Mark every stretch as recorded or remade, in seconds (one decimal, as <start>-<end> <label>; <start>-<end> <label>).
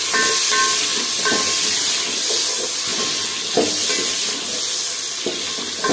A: 0.0-5.9 recorded